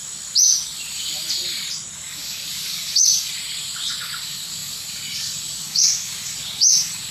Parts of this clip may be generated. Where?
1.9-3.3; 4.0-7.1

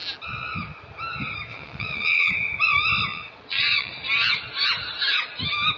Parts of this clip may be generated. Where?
1.5-2.3; 3.1-3.9

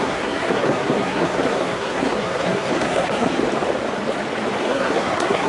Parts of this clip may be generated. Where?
0.0-3.4; 4.6-5.5

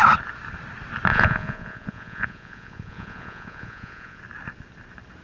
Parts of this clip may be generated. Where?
1.1-4.2

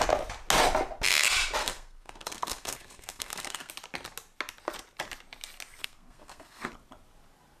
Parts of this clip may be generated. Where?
1.6-3.7; 5.8-6.7

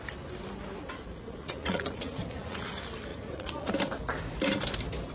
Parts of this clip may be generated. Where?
0.8-2.7; 3.1-3.7

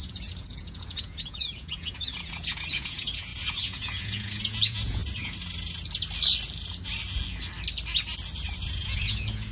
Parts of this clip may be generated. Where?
0.0-5.0; 8.7-9.5

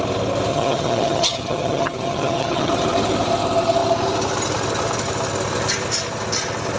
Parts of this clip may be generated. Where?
0.5-2.7